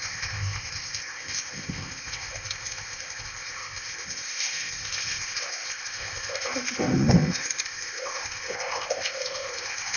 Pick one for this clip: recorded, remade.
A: remade